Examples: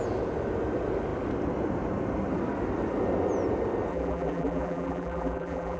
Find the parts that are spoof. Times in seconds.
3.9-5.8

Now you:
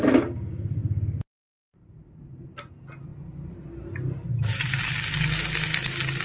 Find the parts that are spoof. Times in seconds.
none

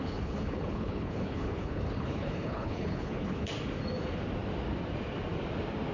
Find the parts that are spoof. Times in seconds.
0.0-3.5

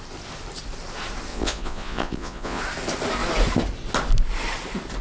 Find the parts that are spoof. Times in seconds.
1.3-2.6

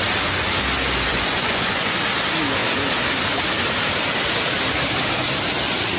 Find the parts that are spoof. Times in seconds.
1.1-2.0

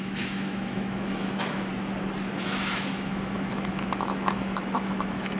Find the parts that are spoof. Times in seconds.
0.0-1.7; 2.3-5.4

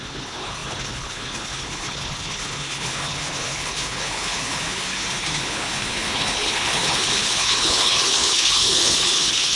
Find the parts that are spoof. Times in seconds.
0.0-9.6